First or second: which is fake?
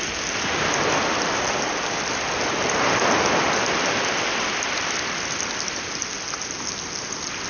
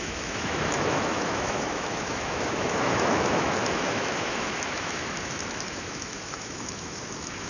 second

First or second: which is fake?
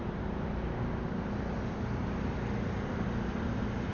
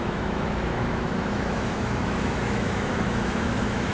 second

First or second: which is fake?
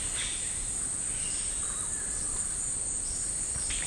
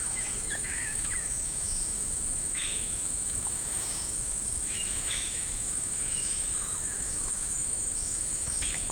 second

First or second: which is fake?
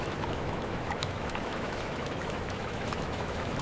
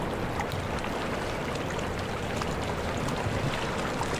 first